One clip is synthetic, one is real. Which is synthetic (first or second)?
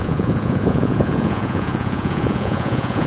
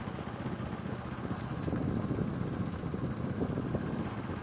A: first